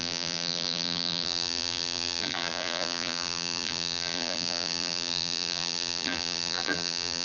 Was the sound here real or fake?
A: fake